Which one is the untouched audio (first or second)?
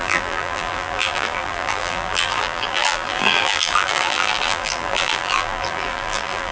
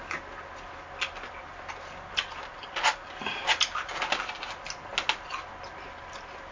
second